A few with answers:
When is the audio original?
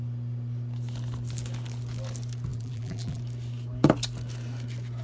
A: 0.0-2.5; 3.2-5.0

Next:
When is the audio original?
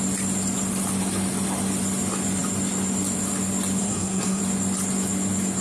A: 0.0-3.8; 4.4-5.6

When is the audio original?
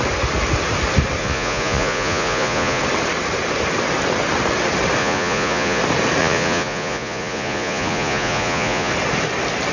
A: 0.0-1.2; 2.8-5.0; 5.8-6.2; 8.9-9.7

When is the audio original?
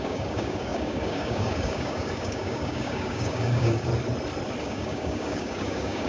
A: 3.9-4.6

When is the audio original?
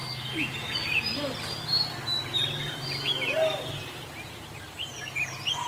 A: 0.0-5.7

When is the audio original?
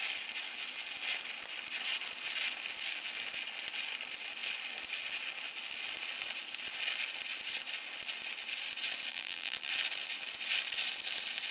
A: 0.0-9.1; 9.7-11.5